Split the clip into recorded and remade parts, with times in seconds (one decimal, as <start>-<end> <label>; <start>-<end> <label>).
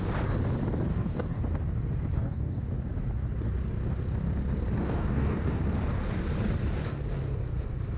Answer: 0.0-0.9 recorded; 0.9-1.4 remade; 1.4-2.1 recorded; 2.1-2.6 remade; 2.6-4.8 recorded; 4.8-5.6 remade; 5.6-8.0 recorded